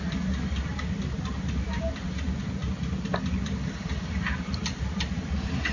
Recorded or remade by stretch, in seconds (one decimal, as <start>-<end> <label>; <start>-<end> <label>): 0.0-5.7 recorded